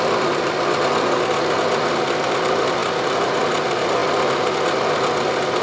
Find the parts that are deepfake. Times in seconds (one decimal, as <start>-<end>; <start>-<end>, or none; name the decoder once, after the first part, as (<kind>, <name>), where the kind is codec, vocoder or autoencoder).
4.0-5.6 (vocoder, BigVGAN v2)